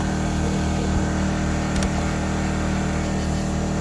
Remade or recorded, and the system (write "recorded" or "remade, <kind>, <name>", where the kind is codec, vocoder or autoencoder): recorded